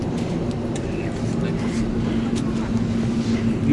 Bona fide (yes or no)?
yes